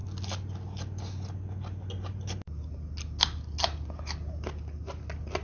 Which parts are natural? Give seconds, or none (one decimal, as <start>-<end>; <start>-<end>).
0.0-5.4